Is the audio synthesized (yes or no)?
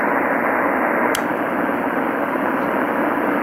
no